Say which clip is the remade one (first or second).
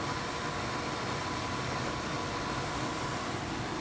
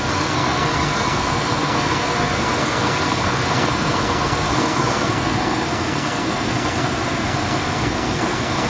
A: second